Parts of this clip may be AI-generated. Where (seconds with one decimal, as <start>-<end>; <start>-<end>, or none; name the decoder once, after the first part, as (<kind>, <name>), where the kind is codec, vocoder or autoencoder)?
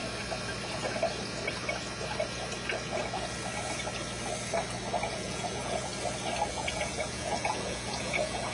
5.1-5.9 (vocoder, Vocos); 6.5-8.5